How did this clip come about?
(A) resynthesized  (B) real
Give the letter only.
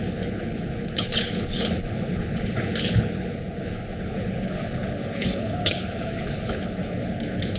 A